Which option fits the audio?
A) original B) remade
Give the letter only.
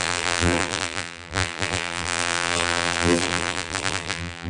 B